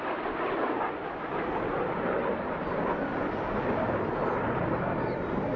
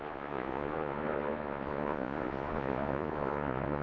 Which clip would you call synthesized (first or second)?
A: second